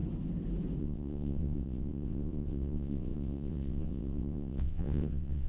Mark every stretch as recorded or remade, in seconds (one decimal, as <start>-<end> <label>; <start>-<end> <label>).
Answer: 0.0-0.8 recorded; 0.8-5.5 remade